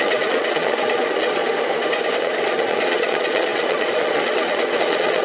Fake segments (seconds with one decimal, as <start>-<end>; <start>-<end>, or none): 0.0-1.4; 2.2-5.2